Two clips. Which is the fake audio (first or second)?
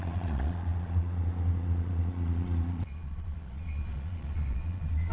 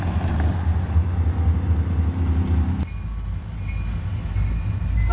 first